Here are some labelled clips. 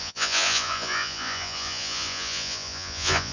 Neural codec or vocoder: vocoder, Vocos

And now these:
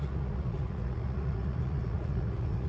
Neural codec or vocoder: vocoder, Vocos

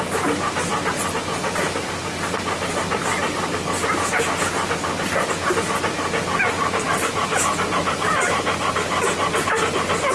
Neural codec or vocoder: none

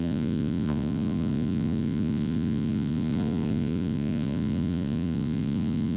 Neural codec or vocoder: vocoder, Vocos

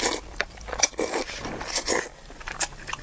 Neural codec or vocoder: none